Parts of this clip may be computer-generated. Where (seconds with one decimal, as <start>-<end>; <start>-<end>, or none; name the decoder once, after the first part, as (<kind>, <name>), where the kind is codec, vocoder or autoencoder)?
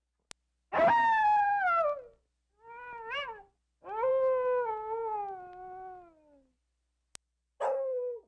none